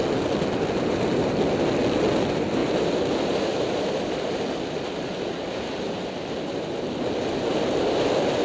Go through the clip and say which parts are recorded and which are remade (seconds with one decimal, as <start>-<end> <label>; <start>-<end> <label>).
0.0-2.6 recorded; 2.6-3.6 remade; 3.6-8.4 recorded